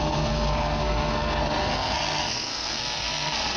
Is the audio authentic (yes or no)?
no